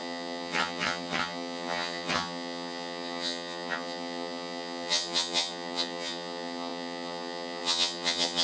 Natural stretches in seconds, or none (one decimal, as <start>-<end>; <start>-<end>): none